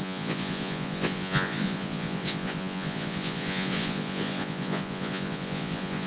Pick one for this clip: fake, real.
fake